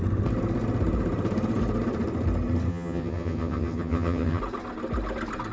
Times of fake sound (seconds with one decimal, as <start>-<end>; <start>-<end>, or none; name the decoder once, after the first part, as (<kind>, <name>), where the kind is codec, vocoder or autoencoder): 2.7-4.4 (vocoder, HiFi-GAN)